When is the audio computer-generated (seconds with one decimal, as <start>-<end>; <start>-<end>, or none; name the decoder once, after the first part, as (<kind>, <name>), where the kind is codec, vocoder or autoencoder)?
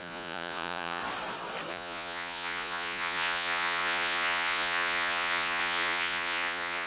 0.0-1.0 (vocoder, Vocos); 1.7-6.9